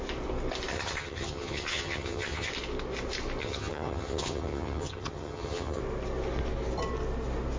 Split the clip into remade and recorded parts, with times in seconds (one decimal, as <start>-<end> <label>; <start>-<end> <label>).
0.0-0.7 recorded; 0.7-2.5 remade; 2.5-3.4 recorded; 3.4-5.8 remade; 5.8-7.6 recorded